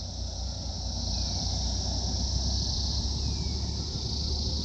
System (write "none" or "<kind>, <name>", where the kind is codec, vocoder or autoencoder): none